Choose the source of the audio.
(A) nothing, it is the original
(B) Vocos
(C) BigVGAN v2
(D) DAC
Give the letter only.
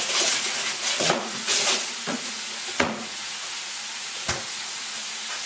B